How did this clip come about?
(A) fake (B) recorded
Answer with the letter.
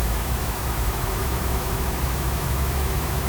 A